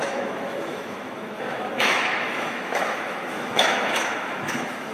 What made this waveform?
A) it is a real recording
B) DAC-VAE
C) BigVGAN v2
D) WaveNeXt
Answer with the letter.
B